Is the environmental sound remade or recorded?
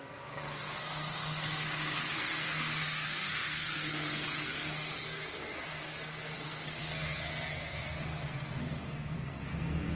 remade